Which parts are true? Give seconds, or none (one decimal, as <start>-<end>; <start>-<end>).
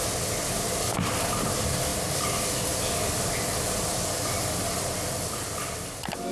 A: 0.0-6.3